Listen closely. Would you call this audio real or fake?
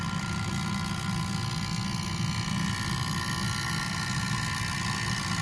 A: real